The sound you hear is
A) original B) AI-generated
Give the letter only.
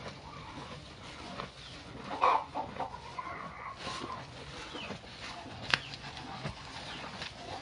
B